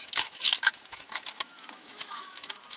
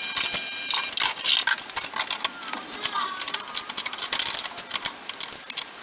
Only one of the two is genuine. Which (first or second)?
second